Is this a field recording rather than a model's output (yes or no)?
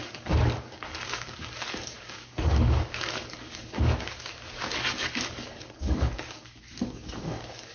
no